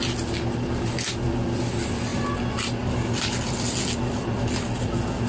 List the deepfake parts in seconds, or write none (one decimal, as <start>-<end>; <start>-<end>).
none